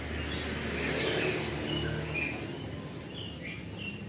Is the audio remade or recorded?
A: recorded